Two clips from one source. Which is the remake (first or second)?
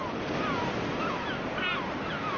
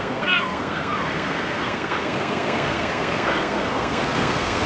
second